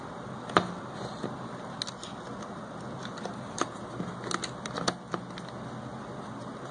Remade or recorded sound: recorded